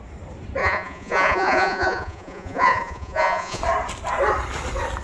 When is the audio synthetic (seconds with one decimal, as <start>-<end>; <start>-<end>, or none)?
0.6-3.6